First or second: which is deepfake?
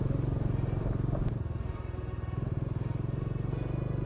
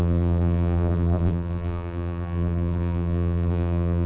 second